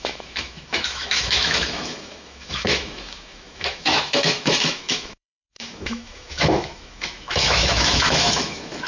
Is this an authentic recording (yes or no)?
no